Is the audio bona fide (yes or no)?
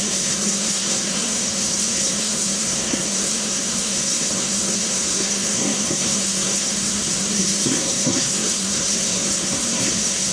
no